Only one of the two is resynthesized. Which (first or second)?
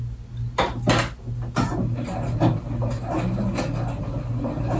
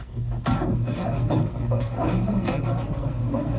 second